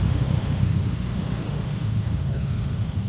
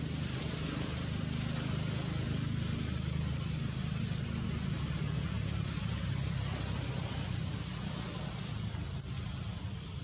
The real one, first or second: second